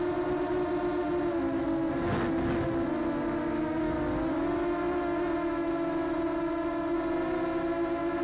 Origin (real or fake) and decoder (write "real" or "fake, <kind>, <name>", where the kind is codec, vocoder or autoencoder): real